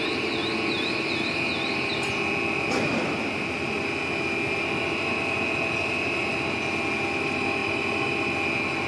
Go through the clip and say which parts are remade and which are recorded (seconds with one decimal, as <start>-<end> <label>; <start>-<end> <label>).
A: 0.0-8.9 recorded